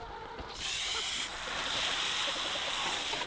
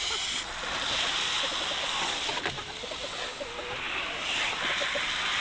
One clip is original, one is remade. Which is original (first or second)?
second